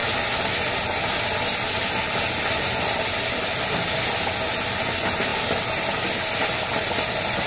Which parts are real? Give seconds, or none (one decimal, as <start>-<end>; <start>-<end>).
0.0-7.5